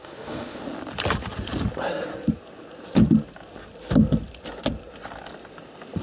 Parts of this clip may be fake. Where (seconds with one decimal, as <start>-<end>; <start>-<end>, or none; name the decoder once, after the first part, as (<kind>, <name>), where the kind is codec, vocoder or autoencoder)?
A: 0.0-0.6 (autoencoder, DAC-VAE)

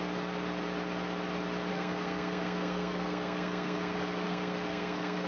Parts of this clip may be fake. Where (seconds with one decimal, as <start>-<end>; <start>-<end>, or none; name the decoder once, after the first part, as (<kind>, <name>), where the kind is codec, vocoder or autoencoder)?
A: 1.7-5.3 (codec, SNAC)

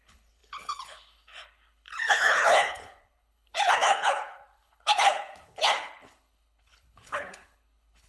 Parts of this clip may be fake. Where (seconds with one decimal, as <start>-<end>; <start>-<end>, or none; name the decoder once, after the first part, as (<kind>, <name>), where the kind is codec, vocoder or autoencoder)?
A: 0.0-8.1 (codec, HILCodec)

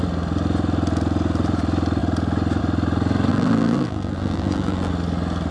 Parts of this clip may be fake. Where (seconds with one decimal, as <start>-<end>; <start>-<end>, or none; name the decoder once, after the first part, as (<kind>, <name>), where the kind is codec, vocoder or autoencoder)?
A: 3.3-4.9 (vocoder, BigVGAN v2)

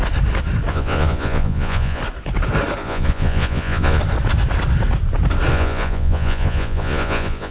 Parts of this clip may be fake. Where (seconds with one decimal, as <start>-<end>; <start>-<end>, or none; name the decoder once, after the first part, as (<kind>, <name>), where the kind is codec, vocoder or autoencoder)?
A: 0.7-2.0 (vocoder, Vocos); 2.8-4.0; 5.5-7.5